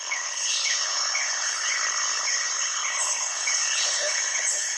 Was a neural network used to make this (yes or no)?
yes